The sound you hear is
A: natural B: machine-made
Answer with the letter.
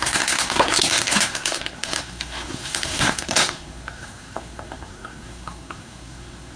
B